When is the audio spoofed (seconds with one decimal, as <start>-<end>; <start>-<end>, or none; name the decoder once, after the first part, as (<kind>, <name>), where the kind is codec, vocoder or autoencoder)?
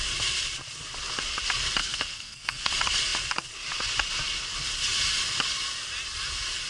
1.8-2.7 (codec, SNAC)